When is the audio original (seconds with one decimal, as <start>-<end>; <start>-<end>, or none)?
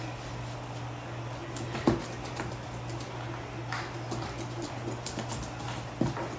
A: 0.0-6.4